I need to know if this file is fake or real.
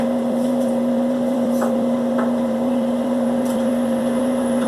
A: fake